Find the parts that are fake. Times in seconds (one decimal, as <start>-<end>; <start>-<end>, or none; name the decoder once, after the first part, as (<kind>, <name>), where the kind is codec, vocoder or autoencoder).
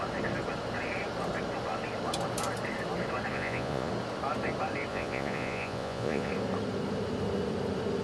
3.3-3.9 (vocoder, Vocos); 4.9-6.3